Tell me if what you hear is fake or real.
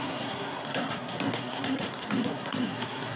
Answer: fake